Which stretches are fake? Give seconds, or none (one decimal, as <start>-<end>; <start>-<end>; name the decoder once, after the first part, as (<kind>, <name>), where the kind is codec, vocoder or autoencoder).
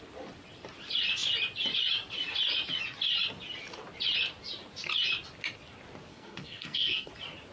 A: 6.1-7.1 (codec, SNAC)